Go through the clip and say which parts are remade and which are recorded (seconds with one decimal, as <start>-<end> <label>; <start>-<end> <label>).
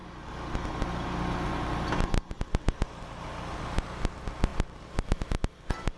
0.0-6.0 recorded